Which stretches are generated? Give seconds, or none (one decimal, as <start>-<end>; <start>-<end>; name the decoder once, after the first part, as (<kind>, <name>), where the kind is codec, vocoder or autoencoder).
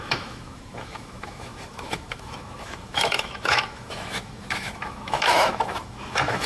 0.0-6.5 (autoencoder, DAC-VAE)